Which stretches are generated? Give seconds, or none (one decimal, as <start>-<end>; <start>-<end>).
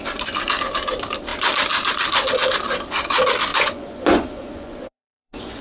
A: 3.5-5.6